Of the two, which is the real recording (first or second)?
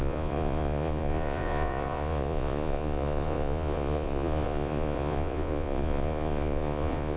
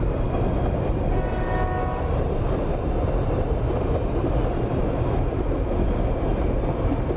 second